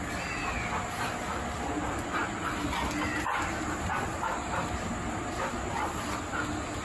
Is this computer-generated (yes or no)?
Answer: no